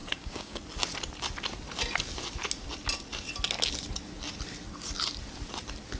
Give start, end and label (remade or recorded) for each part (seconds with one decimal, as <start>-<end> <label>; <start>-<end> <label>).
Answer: 0.0-0.6 remade; 0.6-6.0 recorded